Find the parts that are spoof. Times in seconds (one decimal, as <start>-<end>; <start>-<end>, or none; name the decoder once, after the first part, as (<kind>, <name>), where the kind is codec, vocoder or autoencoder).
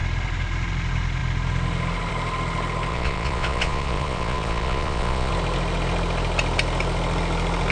2.9-5.3 (vocoder, Vocos)